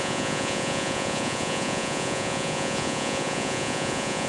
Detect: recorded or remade remade